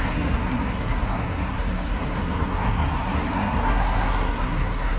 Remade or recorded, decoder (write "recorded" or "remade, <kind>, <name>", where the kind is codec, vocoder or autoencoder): remade, codec, SNAC